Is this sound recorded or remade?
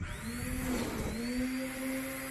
recorded